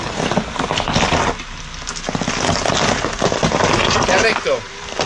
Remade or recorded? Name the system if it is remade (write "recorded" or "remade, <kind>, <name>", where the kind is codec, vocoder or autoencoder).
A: recorded